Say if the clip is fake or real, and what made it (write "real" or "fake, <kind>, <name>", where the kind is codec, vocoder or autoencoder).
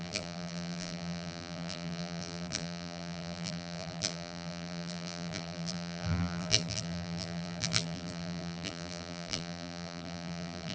fake, vocoder, BigVGAN v2